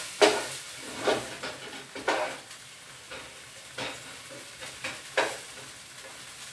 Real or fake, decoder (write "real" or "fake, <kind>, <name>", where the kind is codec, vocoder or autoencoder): real